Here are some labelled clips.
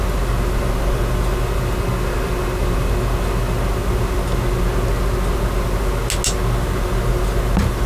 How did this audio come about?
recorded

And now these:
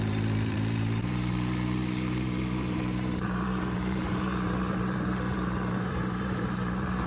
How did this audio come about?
remade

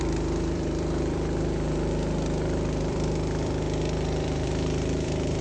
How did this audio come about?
remade